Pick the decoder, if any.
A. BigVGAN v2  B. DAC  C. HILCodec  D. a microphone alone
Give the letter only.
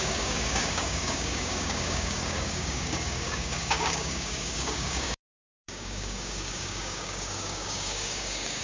B